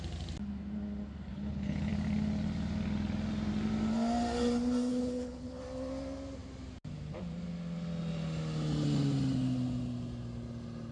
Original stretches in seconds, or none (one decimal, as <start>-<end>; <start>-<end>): 0.0-1.3; 1.9-4.9; 5.6-10.9

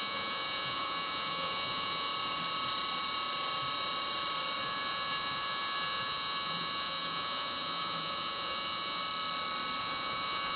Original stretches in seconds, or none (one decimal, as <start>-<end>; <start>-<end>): 2.1-4.6; 9.0-9.8